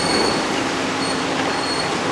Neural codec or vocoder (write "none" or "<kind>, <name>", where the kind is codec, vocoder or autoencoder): vocoder, BigVGAN v2